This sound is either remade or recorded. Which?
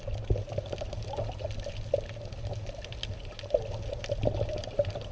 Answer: recorded